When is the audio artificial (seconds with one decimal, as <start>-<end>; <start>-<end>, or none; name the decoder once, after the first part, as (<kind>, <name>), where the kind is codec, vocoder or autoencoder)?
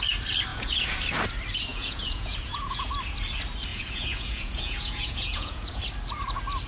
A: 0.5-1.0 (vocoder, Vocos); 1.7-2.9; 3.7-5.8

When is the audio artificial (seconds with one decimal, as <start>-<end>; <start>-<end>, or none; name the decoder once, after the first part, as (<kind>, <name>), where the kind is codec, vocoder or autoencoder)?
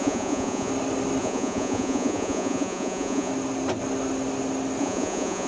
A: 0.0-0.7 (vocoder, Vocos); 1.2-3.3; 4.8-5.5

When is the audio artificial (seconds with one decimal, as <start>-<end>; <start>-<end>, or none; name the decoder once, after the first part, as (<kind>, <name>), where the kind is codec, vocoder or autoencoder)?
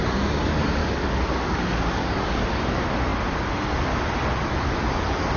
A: 0.8-2.6 (codec, DAC)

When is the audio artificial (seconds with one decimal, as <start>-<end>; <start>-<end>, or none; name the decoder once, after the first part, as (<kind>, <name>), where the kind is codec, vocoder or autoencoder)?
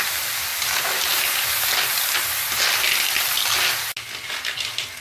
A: none